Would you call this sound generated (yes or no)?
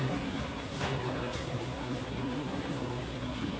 yes